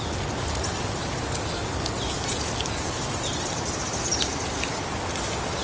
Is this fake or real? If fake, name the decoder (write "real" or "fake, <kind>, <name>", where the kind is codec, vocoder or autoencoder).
real